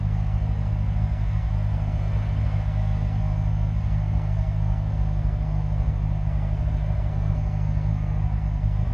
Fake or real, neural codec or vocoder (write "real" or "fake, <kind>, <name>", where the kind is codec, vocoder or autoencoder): fake, codec, SNAC